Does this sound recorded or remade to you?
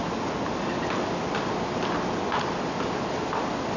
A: recorded